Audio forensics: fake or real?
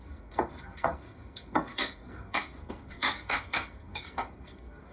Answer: fake